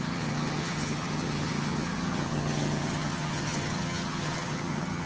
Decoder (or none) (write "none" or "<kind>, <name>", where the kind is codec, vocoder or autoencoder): vocoder, HiFi-GAN